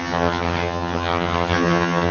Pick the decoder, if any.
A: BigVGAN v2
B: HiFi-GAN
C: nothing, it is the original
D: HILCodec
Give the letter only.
B